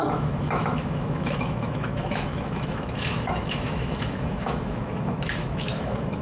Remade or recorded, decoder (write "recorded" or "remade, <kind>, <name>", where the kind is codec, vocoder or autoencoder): remade, autoencoder, DAC-VAE